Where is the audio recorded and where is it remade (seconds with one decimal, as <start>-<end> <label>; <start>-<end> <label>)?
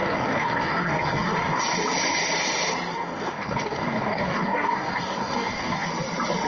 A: 0.0-1.6 remade; 1.6-2.9 recorded; 2.9-5.9 remade; 5.9-6.5 recorded